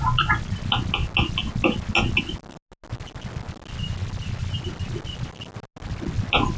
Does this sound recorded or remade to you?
recorded